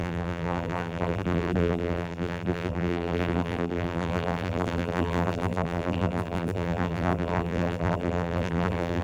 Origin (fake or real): fake